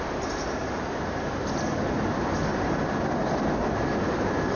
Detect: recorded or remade recorded